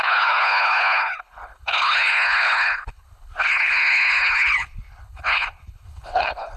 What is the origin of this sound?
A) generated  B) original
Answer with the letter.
A